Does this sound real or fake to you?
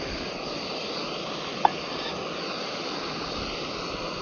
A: real